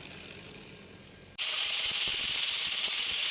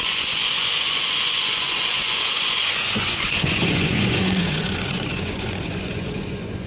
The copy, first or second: second